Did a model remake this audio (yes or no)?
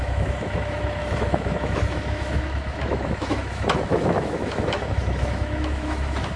yes